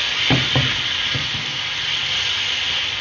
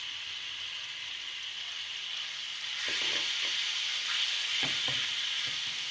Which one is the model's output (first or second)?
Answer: second